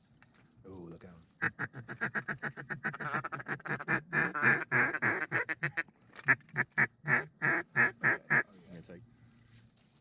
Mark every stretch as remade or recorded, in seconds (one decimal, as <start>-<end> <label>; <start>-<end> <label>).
0.0-10.0 recorded